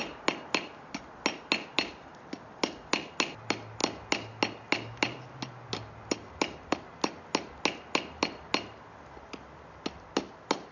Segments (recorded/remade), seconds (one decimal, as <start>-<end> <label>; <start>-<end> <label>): 0.0-10.7 recorded